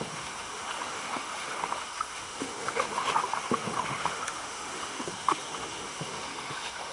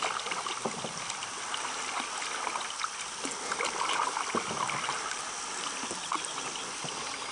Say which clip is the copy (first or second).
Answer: first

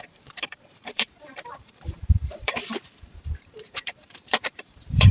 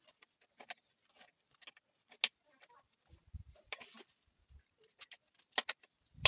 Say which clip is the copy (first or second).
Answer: first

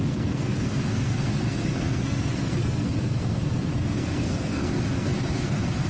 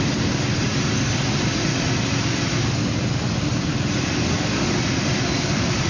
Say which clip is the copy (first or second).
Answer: first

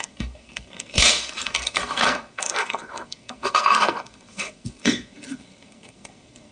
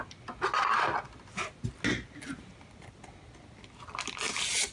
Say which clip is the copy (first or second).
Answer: first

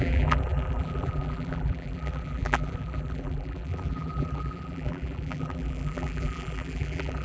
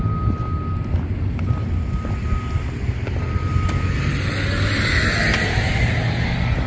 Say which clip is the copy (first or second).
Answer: first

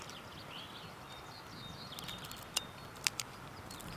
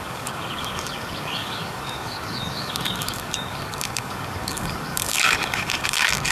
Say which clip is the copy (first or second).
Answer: second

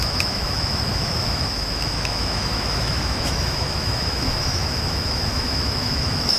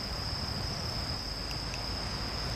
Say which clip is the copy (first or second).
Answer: first